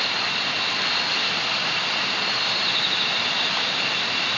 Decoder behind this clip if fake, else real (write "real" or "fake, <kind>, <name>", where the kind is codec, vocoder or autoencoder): real